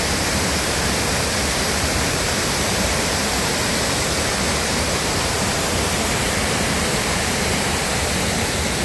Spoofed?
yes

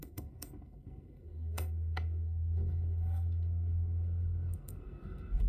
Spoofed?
yes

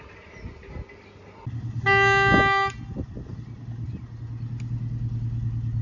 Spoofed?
no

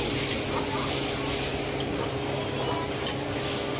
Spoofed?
no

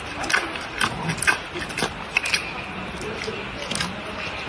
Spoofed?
no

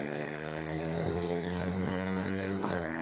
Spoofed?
yes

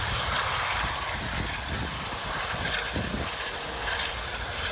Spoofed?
no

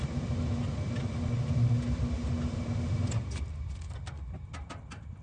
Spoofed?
no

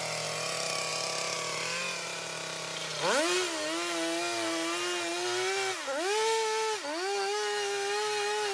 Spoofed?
no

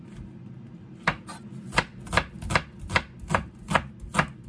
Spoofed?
no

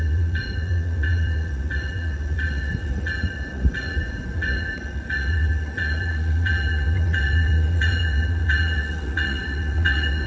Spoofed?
yes